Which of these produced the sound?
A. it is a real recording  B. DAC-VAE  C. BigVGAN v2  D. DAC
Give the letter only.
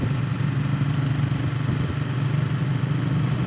A